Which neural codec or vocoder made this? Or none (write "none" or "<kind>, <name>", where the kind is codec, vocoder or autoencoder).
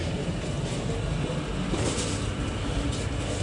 none